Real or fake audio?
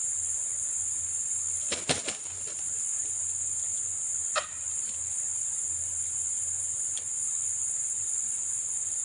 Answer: real